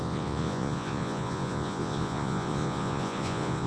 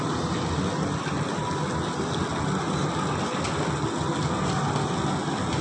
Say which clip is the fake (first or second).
first